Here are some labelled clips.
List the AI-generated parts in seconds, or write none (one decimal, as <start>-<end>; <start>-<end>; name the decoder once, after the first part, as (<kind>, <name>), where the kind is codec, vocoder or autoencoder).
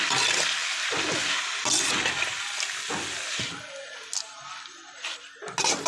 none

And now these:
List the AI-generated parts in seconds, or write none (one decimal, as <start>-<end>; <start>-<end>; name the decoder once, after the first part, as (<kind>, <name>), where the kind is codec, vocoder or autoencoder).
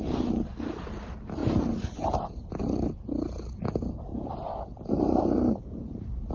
1.4-2.6 (vocoder, BigVGAN v2); 4.1-6.3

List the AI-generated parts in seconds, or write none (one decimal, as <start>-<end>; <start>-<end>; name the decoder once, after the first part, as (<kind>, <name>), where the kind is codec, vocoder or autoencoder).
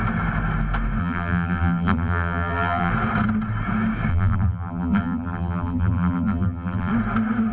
1.0-2.9 (vocoder, BigVGAN v2); 4.1-6.9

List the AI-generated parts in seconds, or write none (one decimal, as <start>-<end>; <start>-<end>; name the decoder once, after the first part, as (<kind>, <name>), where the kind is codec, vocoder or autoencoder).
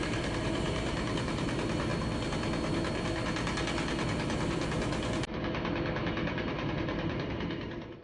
0.0-1.9 (vocoder, BigVGAN v2); 6.7-8.0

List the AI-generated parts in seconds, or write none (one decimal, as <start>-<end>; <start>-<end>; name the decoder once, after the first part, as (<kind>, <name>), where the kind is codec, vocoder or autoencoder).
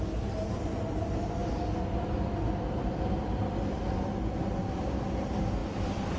5.6-6.2 (vocoder, BigVGAN v2)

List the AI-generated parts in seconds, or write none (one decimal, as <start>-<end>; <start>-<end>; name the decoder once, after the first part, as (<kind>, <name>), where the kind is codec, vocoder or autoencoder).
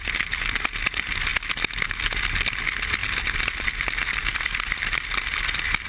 3.0-3.5 (vocoder, BigVGAN v2); 4.3-5.0